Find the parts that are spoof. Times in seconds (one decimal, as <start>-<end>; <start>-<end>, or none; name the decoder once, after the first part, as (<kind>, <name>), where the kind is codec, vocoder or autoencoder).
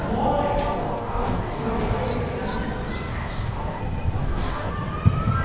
0.8-1.7 (codec, DAC); 3.1-3.8; 4.2-4.7